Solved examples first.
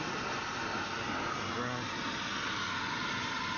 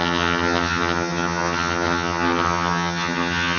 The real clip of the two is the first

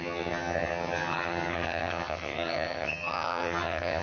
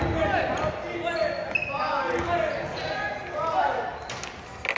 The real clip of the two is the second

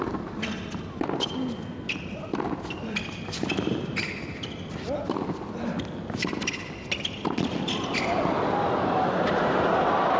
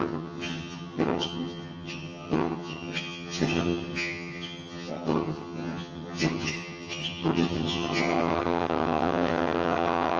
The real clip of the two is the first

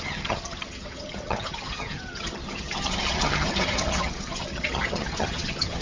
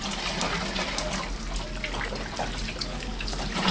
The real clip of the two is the second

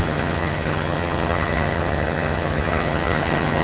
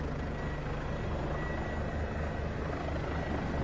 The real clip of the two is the second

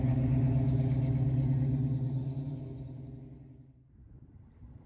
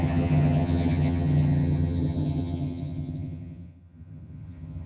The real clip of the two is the first